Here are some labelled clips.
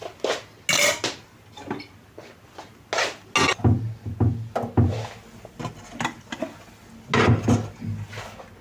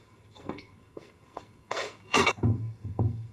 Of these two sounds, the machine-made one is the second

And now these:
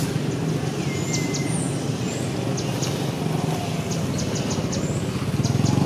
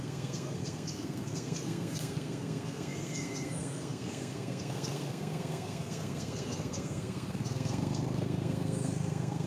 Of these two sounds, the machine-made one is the second